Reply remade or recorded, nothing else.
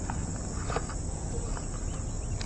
recorded